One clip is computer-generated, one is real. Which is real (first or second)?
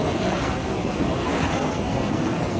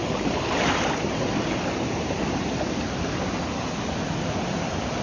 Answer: second